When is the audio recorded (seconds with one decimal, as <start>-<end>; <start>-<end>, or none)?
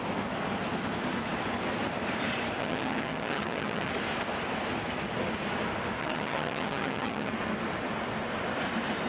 0.0-2.6; 3.9-6.0; 7.3-9.1